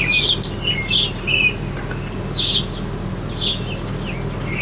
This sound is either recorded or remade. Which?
recorded